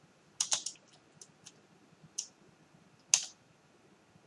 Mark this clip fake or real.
real